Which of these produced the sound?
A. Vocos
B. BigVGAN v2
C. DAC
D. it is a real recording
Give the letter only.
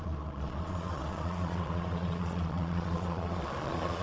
A